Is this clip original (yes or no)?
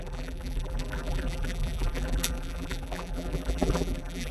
no